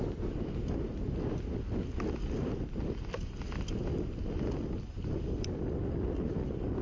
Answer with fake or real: real